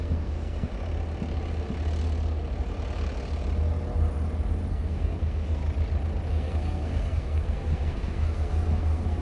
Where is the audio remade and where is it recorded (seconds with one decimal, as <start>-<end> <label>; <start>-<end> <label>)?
0.0-0.7 remade; 0.7-4.7 recorded; 4.7-5.6 remade; 5.6-6.3 recorded; 6.3-9.2 remade